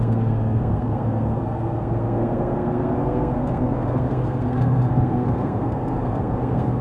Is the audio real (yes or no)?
no